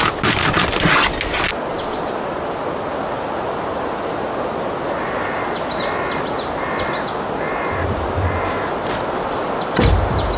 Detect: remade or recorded recorded